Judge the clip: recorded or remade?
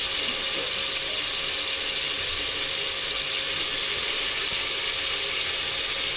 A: recorded